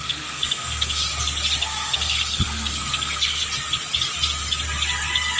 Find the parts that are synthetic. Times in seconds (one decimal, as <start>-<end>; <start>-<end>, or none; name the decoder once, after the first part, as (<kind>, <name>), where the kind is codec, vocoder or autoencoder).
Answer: 0.0-1.0 (codec, SNAC); 1.6-3.4